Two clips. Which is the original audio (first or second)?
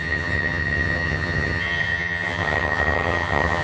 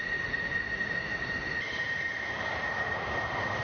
second